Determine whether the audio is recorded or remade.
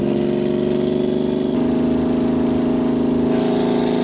recorded